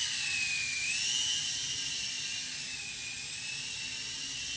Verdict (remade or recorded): recorded